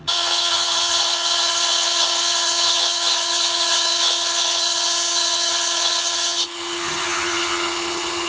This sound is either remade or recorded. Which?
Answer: remade